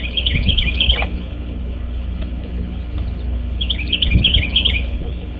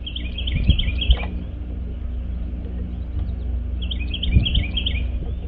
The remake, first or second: first